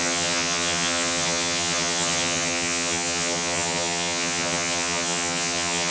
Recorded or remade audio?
remade